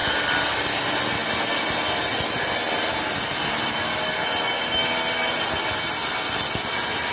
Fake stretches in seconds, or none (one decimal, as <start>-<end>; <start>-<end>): none